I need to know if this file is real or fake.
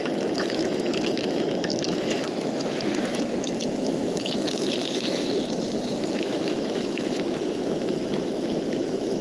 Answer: fake